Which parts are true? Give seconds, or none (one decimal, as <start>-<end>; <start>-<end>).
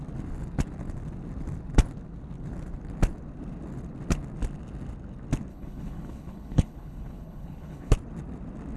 0.0-5.5; 7.9-8.8